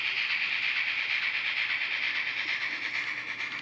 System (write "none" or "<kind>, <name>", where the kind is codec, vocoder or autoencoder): none